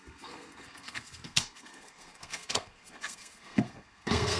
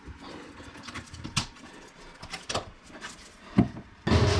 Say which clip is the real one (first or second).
second